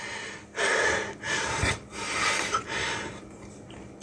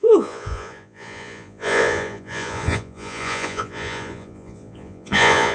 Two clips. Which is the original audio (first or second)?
first